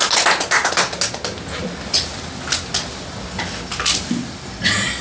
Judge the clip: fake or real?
real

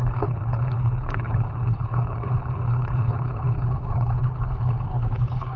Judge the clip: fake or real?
fake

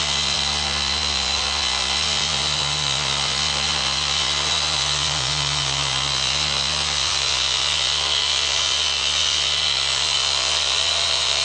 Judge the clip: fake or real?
fake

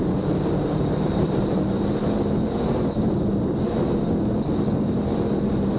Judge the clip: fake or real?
fake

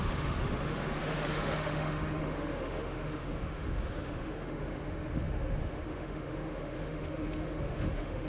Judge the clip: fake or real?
fake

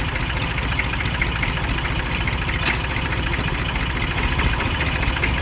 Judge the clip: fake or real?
real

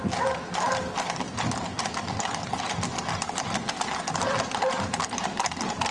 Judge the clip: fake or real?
real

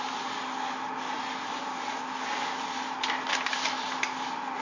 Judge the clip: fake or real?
real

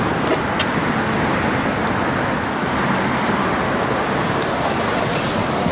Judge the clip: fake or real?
real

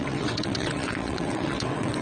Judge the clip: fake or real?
fake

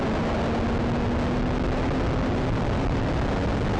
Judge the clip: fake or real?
real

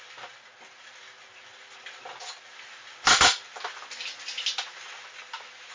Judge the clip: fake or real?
real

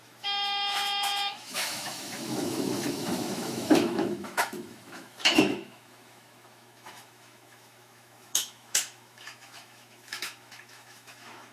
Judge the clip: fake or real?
fake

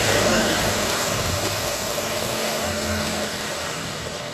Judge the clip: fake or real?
fake